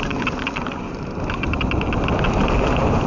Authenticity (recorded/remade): remade